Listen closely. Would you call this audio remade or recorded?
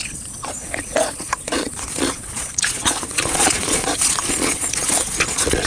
remade